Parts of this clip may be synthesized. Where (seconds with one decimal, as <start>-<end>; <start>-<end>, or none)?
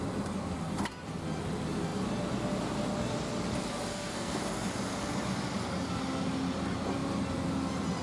3.9-4.4